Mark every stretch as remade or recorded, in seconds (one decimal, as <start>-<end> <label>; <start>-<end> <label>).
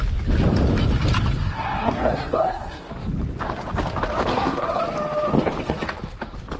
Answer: 0.0-1.4 recorded; 1.4-2.9 remade; 2.9-4.3 recorded; 4.3-4.8 remade; 4.8-6.6 recorded